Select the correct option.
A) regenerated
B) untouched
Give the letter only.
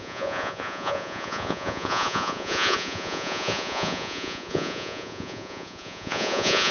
A